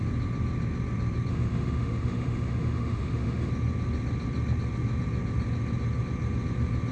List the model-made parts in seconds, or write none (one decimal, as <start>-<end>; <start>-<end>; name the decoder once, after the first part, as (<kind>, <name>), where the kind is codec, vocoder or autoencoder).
1.3-3.5 (autoencoder, DAC-VAE)